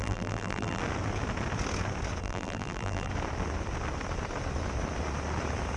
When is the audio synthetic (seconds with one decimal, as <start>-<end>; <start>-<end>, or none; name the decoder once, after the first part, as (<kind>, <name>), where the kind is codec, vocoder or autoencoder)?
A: 0.0-0.8 (vocoder, BigVGAN v2); 2.2-3.1